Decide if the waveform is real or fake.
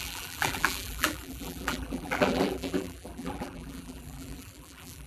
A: fake